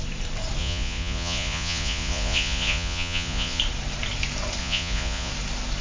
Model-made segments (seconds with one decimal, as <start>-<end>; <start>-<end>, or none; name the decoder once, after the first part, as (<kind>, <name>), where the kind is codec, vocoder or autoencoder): 0.6-3.6 (vocoder, Vocos); 4.6-5.3